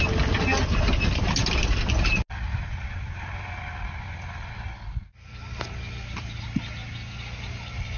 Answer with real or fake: real